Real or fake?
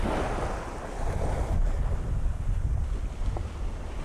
real